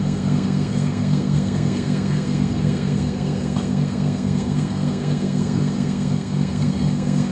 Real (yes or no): no